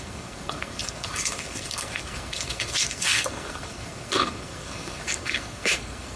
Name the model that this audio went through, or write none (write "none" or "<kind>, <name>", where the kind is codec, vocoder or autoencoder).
codec, SNAC